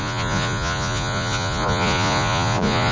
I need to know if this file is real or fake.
fake